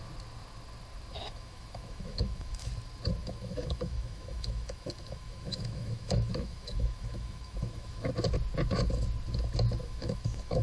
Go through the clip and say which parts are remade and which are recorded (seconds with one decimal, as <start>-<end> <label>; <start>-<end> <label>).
0.0-1.2 recorded; 1.2-2.7 remade; 2.7-3.2 recorded; 3.2-8.1 remade; 8.1-9.8 recorded; 9.8-10.6 remade